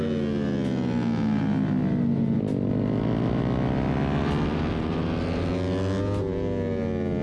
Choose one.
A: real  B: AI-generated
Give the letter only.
A